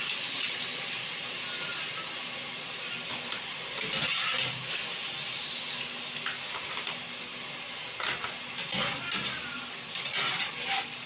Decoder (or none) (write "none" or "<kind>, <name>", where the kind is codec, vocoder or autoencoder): none